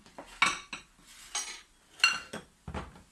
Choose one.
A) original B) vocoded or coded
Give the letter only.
A